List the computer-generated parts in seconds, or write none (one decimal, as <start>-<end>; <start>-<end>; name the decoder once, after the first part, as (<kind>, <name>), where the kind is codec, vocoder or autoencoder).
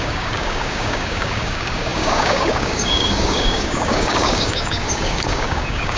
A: 0.0-6.0 (codec, DAC)